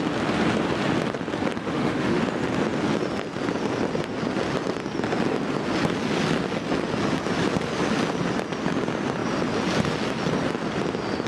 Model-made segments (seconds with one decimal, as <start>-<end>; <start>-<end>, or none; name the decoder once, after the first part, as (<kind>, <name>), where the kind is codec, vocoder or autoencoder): 1.6-2.2 (autoencoder, DAC-VAE)

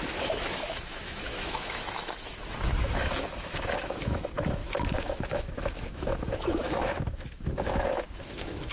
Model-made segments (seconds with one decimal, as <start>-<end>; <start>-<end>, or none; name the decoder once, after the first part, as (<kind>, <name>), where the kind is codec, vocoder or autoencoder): 0.0-8.7 (autoencoder, DAC-VAE)

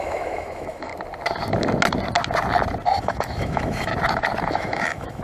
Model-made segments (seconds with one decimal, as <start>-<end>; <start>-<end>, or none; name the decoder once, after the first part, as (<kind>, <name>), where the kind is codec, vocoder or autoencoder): 0.0-0.9 (autoencoder, DAC-VAE); 3.0-3.9; 4.5-5.2

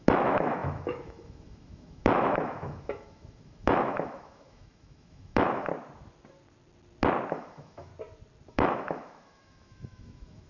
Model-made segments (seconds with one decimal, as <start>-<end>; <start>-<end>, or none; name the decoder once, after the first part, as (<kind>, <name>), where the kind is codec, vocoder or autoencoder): 0.0-5.7 (autoencoder, DAC-VAE); 7.3-7.9; 8.5-10.5

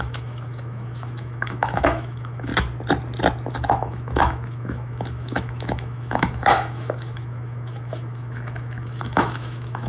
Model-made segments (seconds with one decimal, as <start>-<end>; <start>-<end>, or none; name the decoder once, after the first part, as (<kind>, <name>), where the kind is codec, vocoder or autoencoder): 0.0-2.5 (autoencoder, DAC-VAE); 3.5-9.9

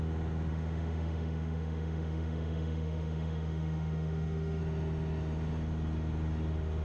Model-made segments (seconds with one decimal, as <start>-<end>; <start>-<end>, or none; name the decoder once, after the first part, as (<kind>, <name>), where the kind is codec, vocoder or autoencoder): 0.5-4.6 (autoencoder, DAC-VAE)

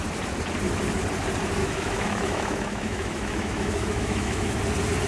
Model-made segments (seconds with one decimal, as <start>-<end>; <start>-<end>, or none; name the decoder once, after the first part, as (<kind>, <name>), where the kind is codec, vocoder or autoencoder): 1.6-4.6 (autoencoder, DAC-VAE)